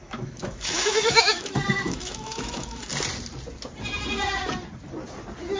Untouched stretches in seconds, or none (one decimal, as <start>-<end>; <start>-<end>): 2.9-5.6